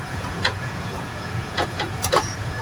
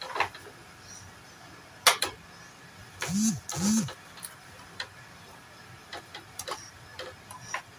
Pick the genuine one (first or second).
second